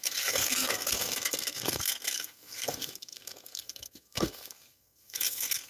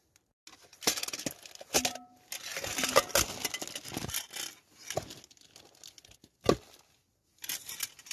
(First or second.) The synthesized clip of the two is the first